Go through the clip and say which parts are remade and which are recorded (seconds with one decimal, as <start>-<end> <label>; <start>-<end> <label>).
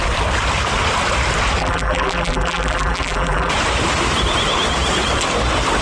0.0-1.6 recorded; 1.6-3.5 remade; 3.5-5.8 recorded